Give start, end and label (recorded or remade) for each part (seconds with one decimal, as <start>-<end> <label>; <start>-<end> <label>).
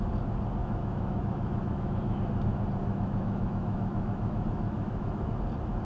0.0-0.6 recorded; 0.6-2.2 remade; 2.2-2.8 recorded; 2.8-5.3 remade; 5.3-5.8 recorded